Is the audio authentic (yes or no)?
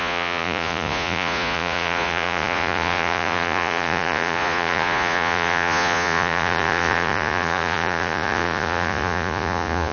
no